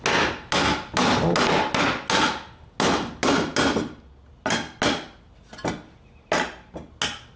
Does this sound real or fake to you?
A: real